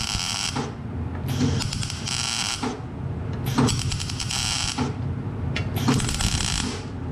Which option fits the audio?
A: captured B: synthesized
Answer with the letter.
A